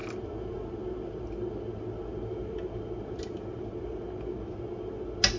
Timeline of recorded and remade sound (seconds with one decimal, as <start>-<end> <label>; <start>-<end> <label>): 0.0-5.4 recorded